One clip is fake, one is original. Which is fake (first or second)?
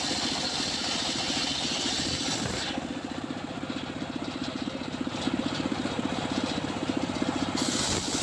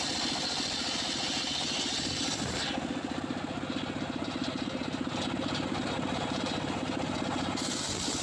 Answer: first